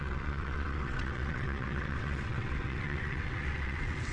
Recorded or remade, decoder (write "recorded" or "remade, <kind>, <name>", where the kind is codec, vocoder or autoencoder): remade, vocoder, WaveNeXt